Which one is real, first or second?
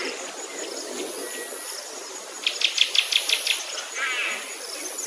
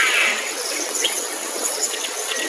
first